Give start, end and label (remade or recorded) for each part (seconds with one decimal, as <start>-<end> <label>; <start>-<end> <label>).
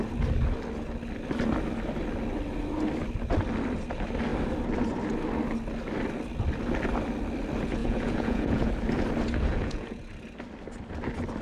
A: 0.0-7.8 recorded; 7.8-8.7 remade; 8.7-9.5 recorded; 9.5-10.0 remade; 10.0-11.4 recorded